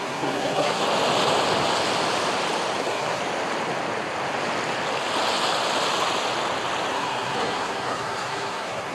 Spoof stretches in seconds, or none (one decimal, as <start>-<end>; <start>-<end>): 0.0-0.8; 2.8-3.2; 6.9-8.9